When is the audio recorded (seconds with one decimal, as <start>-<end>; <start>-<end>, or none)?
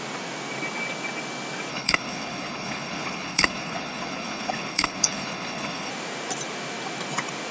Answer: 0.0-1.7; 5.9-7.5